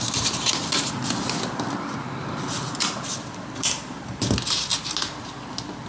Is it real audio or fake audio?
real